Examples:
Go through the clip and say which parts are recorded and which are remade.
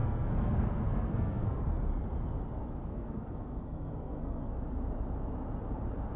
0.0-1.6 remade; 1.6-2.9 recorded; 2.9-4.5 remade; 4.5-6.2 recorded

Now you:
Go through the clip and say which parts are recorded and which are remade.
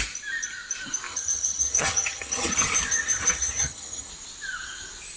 0.0-1.1 recorded; 1.1-4.1 remade; 4.1-5.2 recorded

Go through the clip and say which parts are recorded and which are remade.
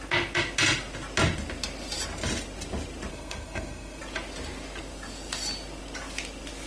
0.0-3.1 recorded; 3.1-4.0 remade; 4.0-6.7 recorded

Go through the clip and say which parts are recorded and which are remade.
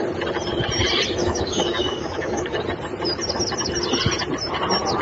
0.0-1.2 recorded; 1.2-2.6 remade; 2.6-5.0 recorded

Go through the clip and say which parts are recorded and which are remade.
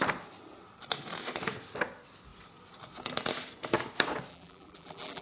0.0-4.3 recorded; 4.3-5.2 remade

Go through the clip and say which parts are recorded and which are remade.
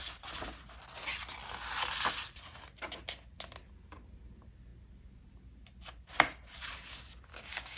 0.0-7.3 recorded; 7.3-7.8 remade